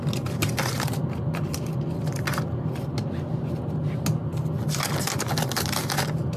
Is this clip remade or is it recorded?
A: recorded